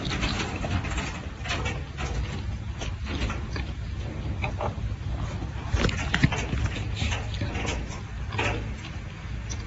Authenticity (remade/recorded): recorded